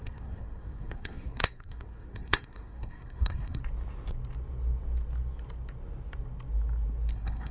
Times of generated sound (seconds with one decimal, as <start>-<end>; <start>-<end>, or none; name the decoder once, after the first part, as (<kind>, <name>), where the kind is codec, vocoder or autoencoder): 0.0-3.6 (codec, SNAC); 7.1-7.5